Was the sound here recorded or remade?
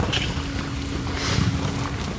recorded